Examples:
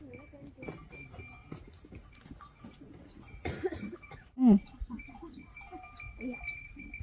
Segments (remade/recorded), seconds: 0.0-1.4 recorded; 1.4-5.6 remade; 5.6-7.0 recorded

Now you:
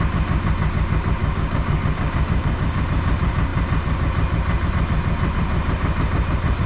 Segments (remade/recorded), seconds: 0.0-1.2 recorded; 1.2-2.8 remade; 2.8-6.7 recorded

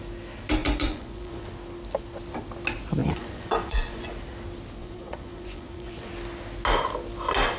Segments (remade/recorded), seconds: 0.0-0.6 recorded; 0.6-1.5 remade; 1.5-3.0 recorded; 3.0-4.1 remade; 4.1-4.8 recorded; 4.8-6.1 remade; 6.1-7.6 recorded